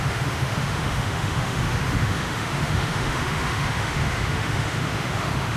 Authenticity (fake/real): fake